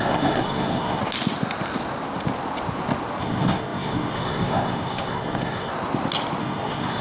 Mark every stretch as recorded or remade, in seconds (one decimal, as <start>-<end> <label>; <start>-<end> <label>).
0.0-1.0 remade; 1.0-3.2 recorded; 3.2-5.7 remade; 5.7-6.4 recorded; 6.4-7.0 remade